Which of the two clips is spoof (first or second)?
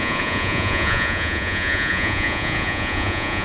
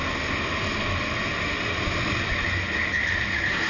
first